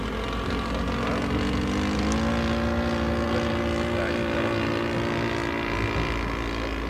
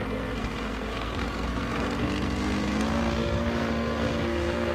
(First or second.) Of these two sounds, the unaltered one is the first